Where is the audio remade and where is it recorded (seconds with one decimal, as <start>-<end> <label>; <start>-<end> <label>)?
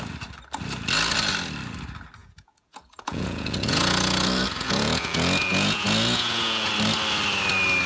0.0-2.2 recorded; 2.2-6.7 remade; 6.7-7.9 recorded